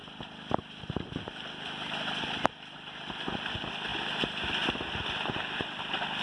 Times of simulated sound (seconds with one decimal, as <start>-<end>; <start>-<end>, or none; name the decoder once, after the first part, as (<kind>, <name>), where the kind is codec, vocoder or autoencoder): none